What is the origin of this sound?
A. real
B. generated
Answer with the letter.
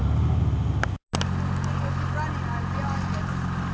A